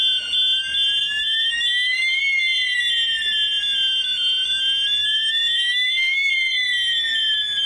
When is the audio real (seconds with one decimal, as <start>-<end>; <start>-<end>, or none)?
0.0-1.0; 2.2-5.0; 6.3-7.7